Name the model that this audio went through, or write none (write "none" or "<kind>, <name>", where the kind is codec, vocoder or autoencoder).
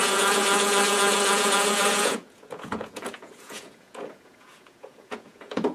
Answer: vocoder, Vocos